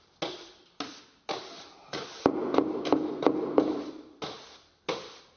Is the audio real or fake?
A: real